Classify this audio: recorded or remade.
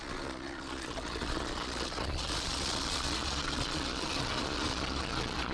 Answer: remade